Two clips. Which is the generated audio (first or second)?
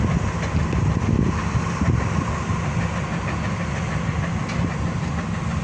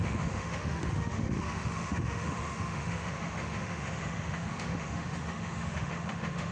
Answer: second